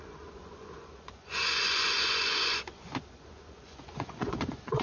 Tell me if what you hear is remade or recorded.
remade